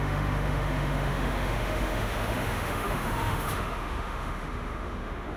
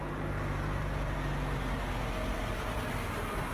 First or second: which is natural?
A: second